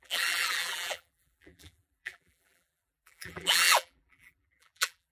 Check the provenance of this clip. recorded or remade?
remade